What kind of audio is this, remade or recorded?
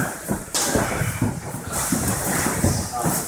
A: remade